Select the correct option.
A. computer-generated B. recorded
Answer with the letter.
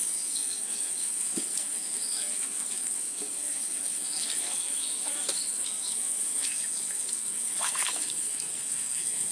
A